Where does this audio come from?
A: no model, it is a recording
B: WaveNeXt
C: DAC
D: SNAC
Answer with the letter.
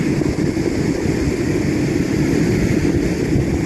A